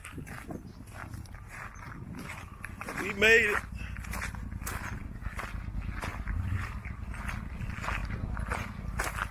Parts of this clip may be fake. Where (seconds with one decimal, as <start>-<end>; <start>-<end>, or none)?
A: 6.1-7.2